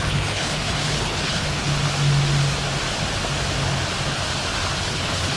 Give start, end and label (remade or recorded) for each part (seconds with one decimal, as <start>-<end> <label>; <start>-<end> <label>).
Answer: 0.0-1.7 remade; 1.7-4.9 recorded; 4.9-5.4 remade